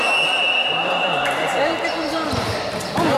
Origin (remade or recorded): recorded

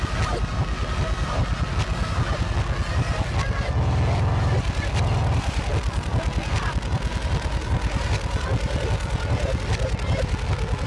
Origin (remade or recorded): recorded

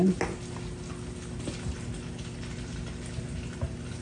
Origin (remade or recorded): recorded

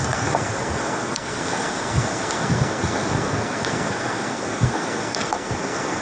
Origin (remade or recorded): remade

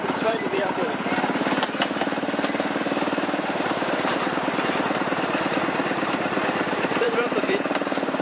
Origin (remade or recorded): remade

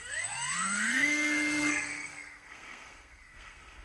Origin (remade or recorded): remade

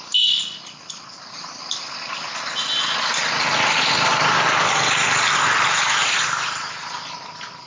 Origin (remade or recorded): recorded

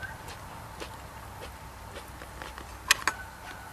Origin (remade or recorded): recorded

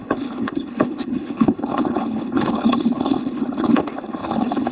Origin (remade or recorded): remade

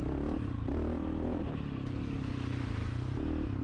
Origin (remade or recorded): recorded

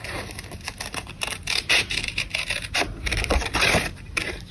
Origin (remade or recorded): remade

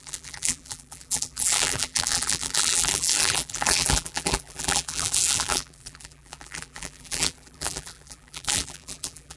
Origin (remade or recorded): remade